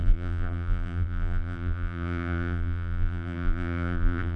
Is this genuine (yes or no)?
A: no